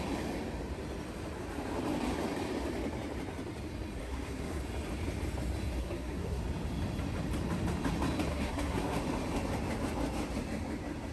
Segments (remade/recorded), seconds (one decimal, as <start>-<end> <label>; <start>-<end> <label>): 0.0-4.0 recorded; 4.0-4.6 remade; 4.6-5.8 recorded; 5.8-6.4 remade; 6.4-8.3 recorded; 8.3-9.0 remade; 9.0-11.1 recorded